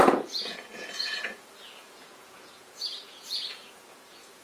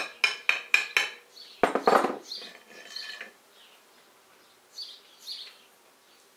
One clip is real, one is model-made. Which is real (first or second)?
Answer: second